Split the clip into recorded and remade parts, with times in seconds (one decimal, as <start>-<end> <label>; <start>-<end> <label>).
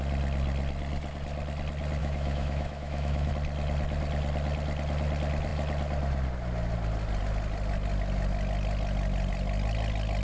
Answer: 0.0-2.0 recorded; 2.0-3.3 remade; 3.3-10.2 recorded